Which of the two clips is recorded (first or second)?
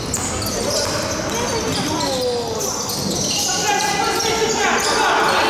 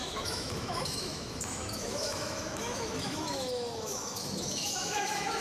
first